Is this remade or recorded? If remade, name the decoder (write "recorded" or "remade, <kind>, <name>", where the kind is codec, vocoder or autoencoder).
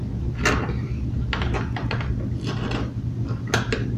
recorded